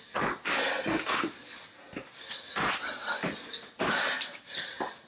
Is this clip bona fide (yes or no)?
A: yes